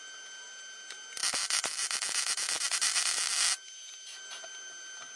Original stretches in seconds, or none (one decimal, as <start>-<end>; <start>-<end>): 0.0-5.2

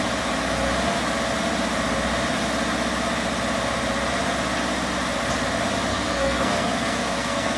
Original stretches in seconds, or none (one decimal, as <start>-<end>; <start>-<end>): 0.0-5.9

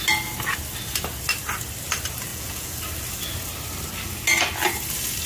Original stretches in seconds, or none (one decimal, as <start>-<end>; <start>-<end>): 0.0-2.3; 2.8-5.3

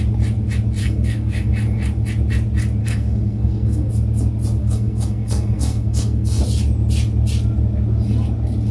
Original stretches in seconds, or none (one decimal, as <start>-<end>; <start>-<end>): 0.0-0.8; 1.5-2.8; 3.9-4.6; 6.4-8.7